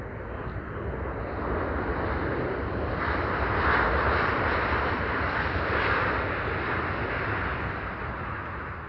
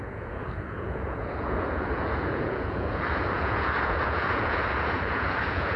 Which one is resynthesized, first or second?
second